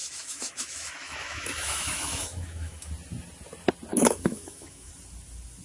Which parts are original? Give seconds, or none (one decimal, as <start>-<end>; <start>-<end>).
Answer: 2.9-3.9; 4.9-5.6